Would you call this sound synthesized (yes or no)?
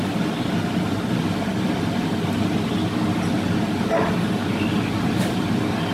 no